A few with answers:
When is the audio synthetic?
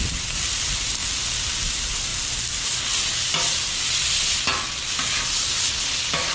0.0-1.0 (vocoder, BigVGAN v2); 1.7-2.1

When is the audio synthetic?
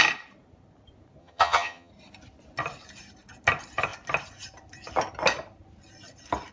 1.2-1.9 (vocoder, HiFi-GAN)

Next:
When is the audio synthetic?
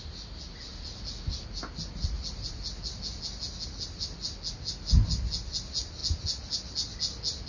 none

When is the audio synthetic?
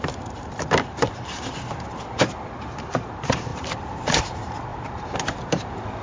0.0-6.0 (vocoder, BigVGAN v2)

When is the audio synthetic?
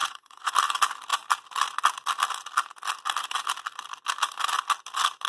0.0-0.5 (vocoder, WaveNeXt)